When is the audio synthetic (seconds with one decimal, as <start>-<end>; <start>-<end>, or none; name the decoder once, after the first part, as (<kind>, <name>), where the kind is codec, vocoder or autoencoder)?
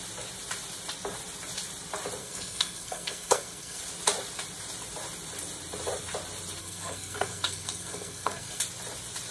2.2-3.8 (codec, SNAC); 6.6-8.6